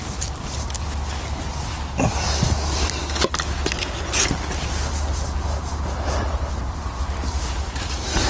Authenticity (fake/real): real